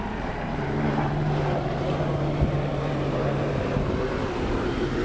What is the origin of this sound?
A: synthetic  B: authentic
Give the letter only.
A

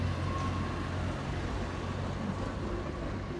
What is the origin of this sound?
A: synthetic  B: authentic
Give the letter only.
B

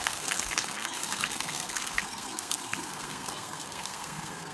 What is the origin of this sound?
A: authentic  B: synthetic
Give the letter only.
B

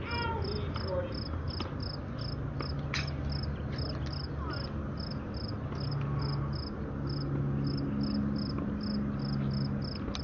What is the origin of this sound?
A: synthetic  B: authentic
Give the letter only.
B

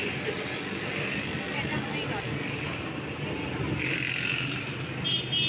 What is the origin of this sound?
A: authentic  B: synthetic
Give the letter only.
A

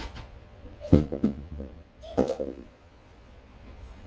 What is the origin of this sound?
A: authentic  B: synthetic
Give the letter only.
B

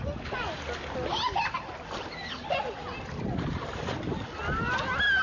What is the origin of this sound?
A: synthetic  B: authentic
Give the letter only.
B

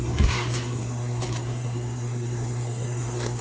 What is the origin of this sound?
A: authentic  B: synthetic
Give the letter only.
B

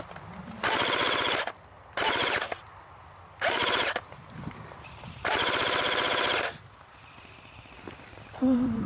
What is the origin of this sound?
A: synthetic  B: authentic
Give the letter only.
A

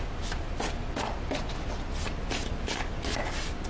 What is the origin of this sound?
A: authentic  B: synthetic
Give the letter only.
A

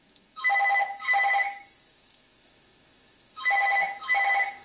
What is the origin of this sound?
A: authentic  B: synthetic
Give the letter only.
B